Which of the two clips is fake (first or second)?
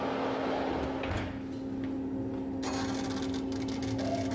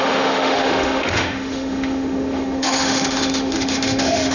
second